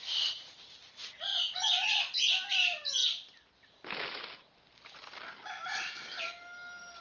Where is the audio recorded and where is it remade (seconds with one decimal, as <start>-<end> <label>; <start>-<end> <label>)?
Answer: 0.0-1.3 recorded; 1.3-2.0 remade; 2.0-7.0 recorded